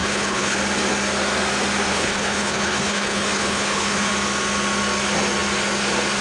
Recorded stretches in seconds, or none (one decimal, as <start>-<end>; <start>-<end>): 0.6-1.9; 4.1-6.2